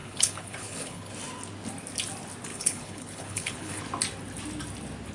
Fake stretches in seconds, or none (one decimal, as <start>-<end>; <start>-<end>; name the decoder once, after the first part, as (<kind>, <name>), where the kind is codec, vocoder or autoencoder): 0.0-1.1 (codec, HILCodec); 2.5-3.8